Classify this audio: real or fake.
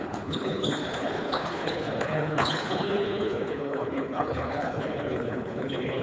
fake